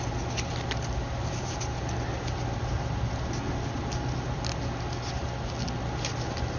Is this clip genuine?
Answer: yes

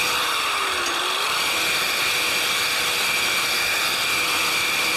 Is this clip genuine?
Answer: no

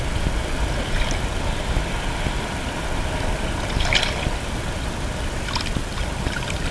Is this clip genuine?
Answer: yes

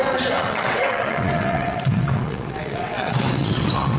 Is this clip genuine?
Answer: no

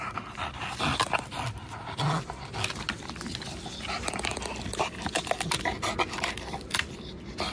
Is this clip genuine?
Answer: yes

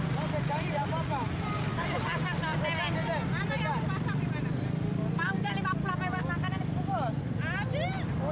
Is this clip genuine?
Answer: yes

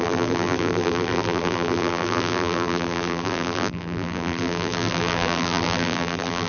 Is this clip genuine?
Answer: no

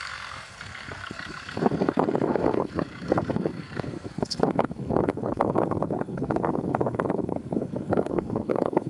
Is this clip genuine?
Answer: no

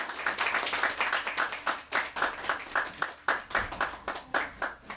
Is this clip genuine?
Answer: yes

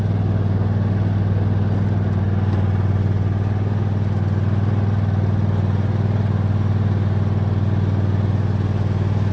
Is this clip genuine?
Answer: yes